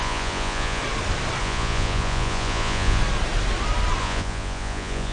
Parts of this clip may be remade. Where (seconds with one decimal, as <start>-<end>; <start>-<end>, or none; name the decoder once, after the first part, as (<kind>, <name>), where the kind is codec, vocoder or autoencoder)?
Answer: 0.0-0.8 (vocoder, Vocos); 1.4-3.0; 4.0-5.1